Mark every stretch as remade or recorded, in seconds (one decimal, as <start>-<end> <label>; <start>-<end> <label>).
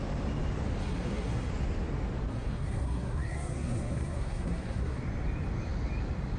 0.0-0.8 recorded; 0.8-1.5 remade; 1.5-2.3 recorded; 2.3-5.0 remade; 5.0-6.4 recorded